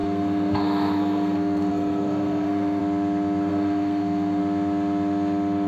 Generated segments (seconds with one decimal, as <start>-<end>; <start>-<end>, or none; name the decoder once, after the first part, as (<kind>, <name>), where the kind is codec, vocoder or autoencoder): 0.0-2.8 (codec, SNAC); 3.5-4.4